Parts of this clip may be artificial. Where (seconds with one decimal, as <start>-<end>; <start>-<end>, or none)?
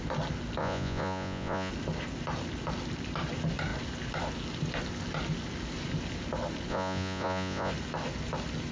0.6-1.7; 6.7-7.7